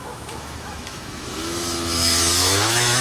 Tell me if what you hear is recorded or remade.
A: remade